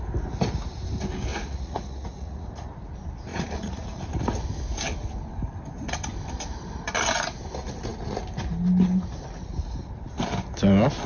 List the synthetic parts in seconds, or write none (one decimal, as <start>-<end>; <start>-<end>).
1.3-2.7; 3.3-4.0